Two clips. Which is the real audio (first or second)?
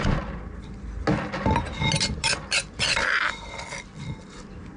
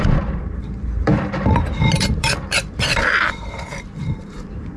first